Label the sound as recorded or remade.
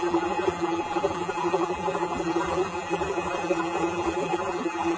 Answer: remade